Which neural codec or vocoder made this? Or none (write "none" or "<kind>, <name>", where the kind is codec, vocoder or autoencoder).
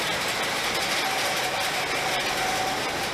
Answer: none